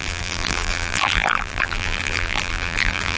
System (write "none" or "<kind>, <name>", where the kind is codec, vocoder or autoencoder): vocoder, BigVGAN v2